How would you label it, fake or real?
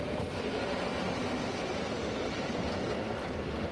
real